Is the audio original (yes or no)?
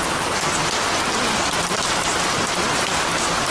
yes